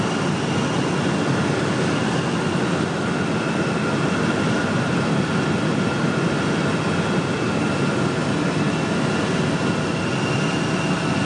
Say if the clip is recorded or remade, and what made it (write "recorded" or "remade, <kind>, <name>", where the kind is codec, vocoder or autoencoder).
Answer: recorded